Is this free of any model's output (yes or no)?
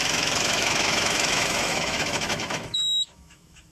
no